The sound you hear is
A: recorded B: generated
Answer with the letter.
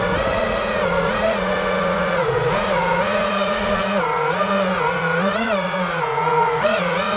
B